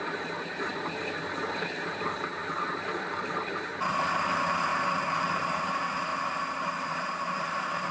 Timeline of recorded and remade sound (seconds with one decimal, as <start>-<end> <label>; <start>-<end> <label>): 0.0-4.7 remade; 4.7-5.2 recorded; 5.2-7.9 remade

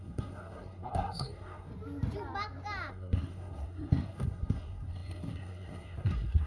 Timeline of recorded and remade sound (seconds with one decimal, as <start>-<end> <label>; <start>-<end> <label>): 0.0-1.7 remade; 1.7-2.9 recorded; 2.9-6.5 remade

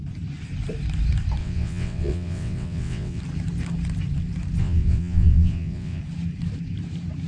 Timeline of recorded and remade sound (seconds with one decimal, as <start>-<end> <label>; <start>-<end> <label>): 0.0-1.4 recorded; 1.4-3.2 remade; 3.2-4.6 recorded; 4.6-6.0 remade; 6.0-7.3 recorded

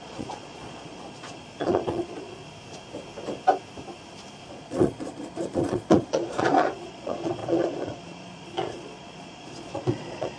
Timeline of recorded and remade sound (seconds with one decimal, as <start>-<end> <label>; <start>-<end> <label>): 0.0-2.4 remade; 2.4-4.5 recorded; 4.5-10.4 remade

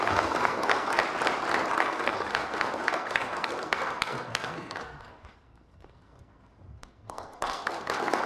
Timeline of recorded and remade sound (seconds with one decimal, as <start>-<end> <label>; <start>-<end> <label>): 0.0-1.0 remade; 1.0-1.7 recorded; 1.7-8.3 remade

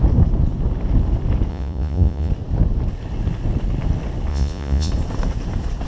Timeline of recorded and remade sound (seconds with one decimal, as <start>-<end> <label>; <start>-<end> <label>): 0.0-1.5 recorded; 1.5-2.3 remade; 2.3-4.3 recorded; 4.3-4.9 remade; 4.9-5.9 recorded